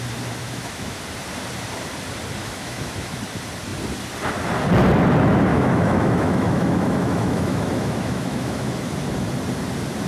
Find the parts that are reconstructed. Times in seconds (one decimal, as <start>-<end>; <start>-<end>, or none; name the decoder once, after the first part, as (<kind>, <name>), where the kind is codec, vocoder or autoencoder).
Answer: 0.4-1.0 (autoencoder, DAC-VAE); 2.4-3.2; 5.5-8.8